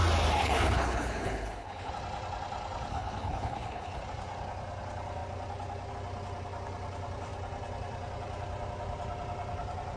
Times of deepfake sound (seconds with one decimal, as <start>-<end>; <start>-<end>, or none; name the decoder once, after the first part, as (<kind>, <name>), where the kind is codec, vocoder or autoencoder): 0.4-1.9 (codec, HILCodec); 2.9-4.0